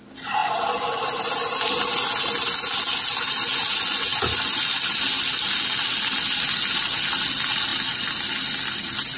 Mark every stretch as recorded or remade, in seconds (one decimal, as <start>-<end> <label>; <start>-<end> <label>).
0.0-9.2 recorded